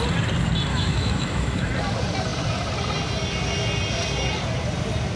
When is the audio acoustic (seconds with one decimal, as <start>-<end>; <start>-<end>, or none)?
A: 0.0-0.7; 1.7-5.2